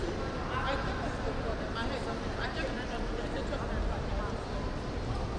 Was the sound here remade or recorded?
recorded